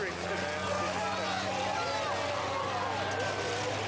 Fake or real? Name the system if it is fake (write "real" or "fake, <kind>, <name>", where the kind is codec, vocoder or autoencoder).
real